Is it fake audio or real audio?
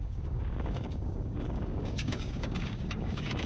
fake